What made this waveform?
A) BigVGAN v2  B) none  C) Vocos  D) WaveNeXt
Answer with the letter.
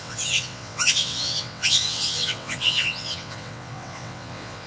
D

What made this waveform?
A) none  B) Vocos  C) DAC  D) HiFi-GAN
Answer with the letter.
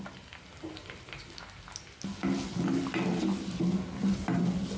A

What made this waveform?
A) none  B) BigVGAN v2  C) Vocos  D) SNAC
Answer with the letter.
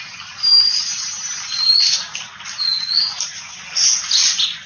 A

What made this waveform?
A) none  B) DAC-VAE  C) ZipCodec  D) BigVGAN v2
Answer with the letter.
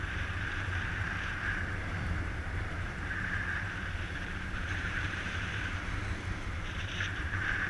D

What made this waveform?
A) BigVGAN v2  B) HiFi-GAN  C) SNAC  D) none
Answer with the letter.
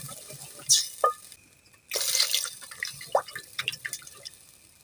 D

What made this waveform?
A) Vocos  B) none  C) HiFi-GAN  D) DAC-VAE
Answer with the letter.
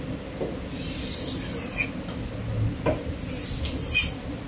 B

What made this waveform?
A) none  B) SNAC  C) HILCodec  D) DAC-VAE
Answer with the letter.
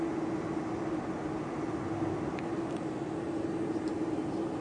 A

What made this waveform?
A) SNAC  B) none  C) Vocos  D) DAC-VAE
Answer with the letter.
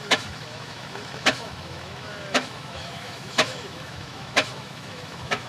D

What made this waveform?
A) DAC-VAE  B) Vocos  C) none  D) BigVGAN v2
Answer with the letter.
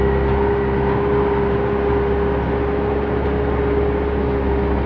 C